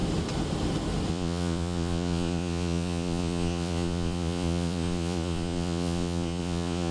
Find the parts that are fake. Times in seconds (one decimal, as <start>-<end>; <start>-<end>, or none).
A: 1.1-6.9